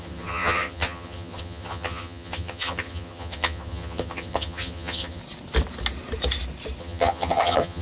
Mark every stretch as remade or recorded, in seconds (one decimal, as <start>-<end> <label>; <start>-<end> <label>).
0.0-5.2 remade; 5.2-6.8 recorded; 6.8-7.8 remade